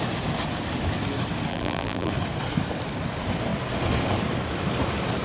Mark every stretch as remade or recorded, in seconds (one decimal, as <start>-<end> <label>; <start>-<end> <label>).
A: 0.0-1.5 recorded; 1.5-2.1 remade; 2.1-5.2 recorded